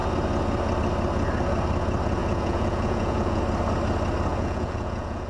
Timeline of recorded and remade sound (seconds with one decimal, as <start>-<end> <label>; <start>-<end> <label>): 0.0-2.2 recorded; 2.2-3.4 remade; 3.4-4.3 recorded; 4.3-5.3 remade